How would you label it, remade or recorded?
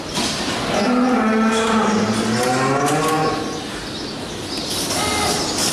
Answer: recorded